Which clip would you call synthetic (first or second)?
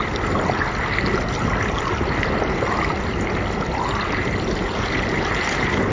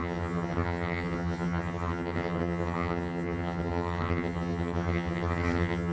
second